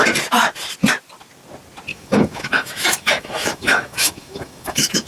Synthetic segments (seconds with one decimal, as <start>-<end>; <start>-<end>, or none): 1.9-5.1